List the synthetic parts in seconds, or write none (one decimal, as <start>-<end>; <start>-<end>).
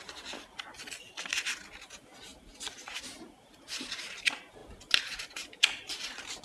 none